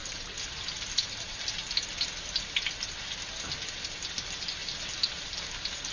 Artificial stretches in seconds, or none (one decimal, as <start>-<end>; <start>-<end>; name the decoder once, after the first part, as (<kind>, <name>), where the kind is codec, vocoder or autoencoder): none